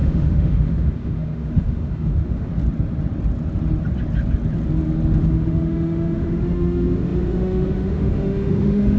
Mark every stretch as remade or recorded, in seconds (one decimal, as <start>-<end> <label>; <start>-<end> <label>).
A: 0.0-2.5 remade; 2.5-5.2 recorded; 5.2-9.0 remade